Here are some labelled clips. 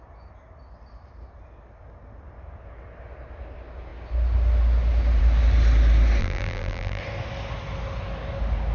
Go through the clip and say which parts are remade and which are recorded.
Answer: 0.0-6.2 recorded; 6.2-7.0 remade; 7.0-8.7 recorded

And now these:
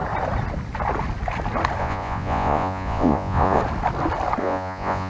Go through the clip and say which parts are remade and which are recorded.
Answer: 0.0-1.8 recorded; 1.8-3.6 remade; 3.6-4.4 recorded; 4.4-5.1 remade

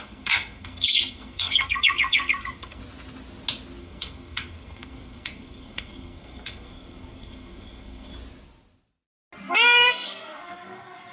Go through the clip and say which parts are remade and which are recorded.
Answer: 0.0-2.8 remade; 2.8-3.8 recorded; 3.8-8.1 remade; 8.1-9.5 recorded; 9.5-11.1 remade

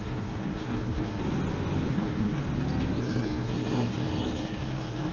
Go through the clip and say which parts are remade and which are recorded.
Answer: 0.0-1.2 remade; 1.2-1.9 recorded; 1.9-2.4 remade; 2.4-3.0 recorded; 3.0-5.1 remade

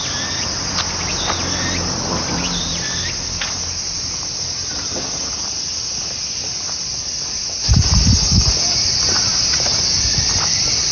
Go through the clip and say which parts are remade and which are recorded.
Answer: 0.0-10.9 recorded

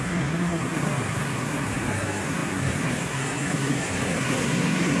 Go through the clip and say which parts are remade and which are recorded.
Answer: 0.0-5.0 remade

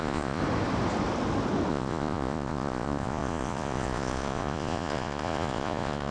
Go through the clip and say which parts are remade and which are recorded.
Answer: 0.0-0.4 remade; 0.4-1.7 recorded; 1.7-6.1 remade